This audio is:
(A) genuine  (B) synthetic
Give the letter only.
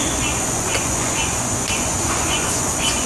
B